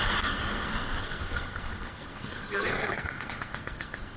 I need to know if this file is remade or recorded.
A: remade